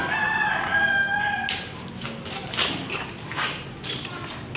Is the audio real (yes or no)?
yes